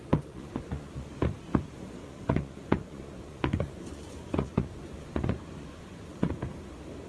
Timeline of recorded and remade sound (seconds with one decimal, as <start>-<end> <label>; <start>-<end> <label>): 0.0-1.1 remade; 1.1-2.0 recorded; 2.0-6.3 remade; 6.3-7.1 recorded